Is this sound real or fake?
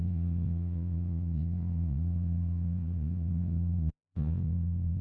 fake